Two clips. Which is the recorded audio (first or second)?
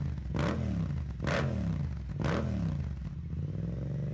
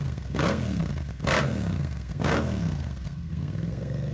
first